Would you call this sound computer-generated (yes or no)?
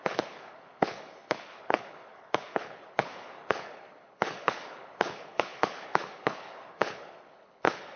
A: yes